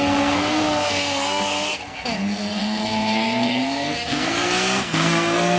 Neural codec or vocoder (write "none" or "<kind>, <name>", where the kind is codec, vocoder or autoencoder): codec, SNAC